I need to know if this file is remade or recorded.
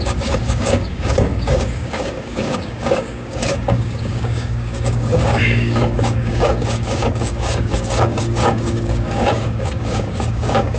remade